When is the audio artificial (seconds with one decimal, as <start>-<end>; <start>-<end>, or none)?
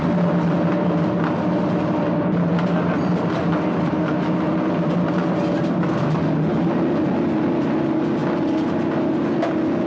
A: none